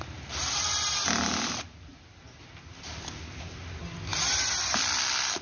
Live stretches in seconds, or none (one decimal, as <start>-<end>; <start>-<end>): 0.0-1.9; 3.4-4.1